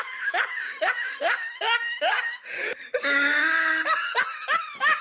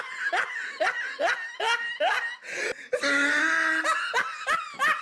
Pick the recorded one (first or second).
second